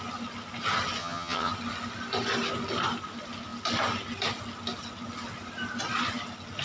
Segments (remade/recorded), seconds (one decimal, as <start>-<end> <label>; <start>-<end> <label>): 0.0-1.0 recorded; 1.0-1.5 remade; 1.5-6.6 recorded